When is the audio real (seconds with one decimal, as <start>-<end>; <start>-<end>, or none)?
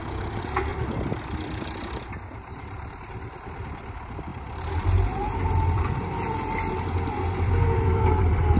0.7-1.2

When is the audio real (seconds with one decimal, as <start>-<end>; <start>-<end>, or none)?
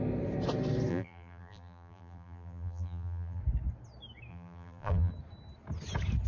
0.0-0.9; 3.4-4.3; 5.1-6.3